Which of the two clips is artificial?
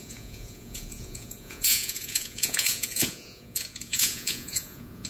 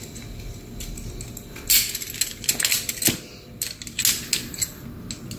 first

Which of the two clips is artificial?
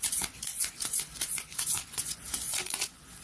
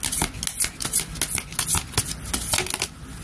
first